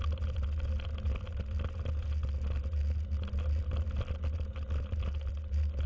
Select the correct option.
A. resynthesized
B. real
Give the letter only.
B